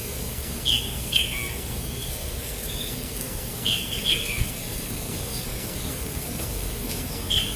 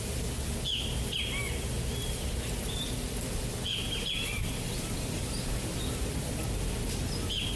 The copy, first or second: first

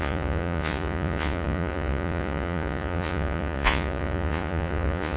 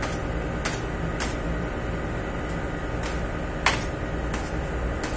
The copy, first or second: first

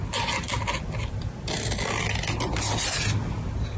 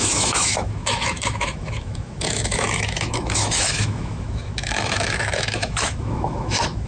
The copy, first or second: second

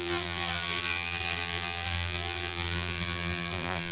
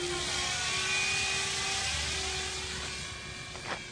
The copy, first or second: first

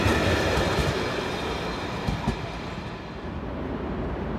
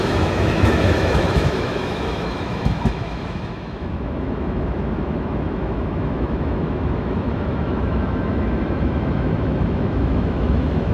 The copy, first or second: second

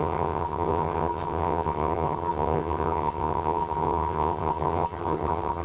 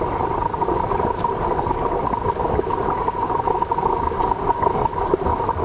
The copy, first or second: first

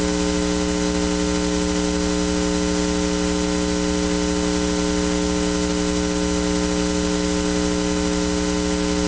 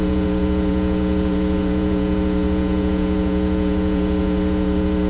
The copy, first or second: second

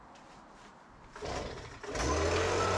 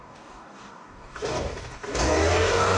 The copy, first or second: second